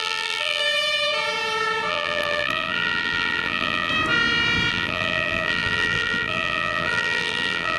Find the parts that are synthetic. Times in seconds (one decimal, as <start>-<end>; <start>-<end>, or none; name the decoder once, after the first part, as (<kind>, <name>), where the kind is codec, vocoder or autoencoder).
0.0-0.6 (vocoder, BigVGAN v2); 1.9-3.9; 4.7-7.8